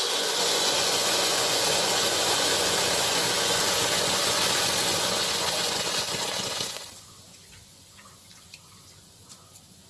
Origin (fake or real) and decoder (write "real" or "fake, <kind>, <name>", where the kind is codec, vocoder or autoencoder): fake, vocoder, Vocos